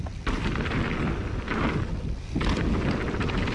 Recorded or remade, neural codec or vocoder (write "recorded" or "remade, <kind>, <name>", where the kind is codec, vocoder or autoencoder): recorded